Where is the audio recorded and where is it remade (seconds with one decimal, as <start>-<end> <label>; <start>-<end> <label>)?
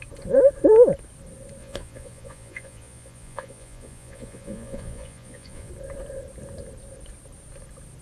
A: 0.0-1.6 recorded; 1.6-5.7 remade; 5.7-8.0 recorded